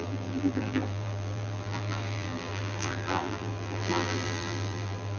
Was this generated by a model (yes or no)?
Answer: yes